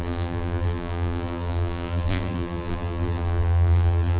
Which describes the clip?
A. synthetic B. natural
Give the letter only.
A